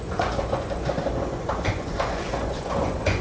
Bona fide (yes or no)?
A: no